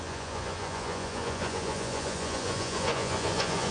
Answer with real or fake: fake